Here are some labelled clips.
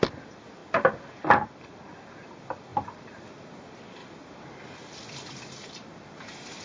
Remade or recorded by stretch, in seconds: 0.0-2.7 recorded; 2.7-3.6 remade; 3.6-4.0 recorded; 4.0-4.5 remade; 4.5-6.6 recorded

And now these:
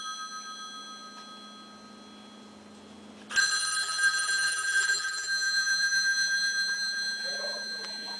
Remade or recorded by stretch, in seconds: 0.0-3.8 recorded; 3.8-8.2 remade

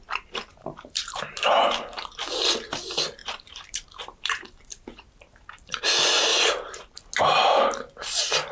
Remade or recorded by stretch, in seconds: 0.0-0.5 recorded; 0.5-1.8 remade; 1.8-3.2 recorded; 3.2-5.8 remade; 5.8-6.3 recorded; 6.3-7.0 remade; 7.0-8.5 recorded

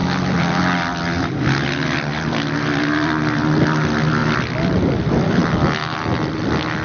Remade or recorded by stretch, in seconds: 0.0-6.8 recorded